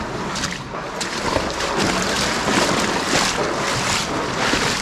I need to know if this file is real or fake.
real